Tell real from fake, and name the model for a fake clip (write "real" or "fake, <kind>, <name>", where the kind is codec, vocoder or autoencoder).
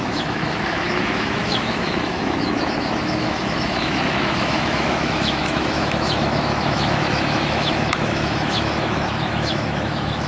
fake, autoencoder, DAC-VAE